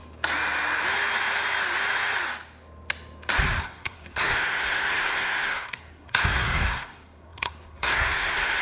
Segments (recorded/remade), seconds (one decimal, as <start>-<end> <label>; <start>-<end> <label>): 0.0-3.6 recorded; 3.6-8.6 remade